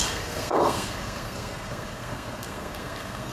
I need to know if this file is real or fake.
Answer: fake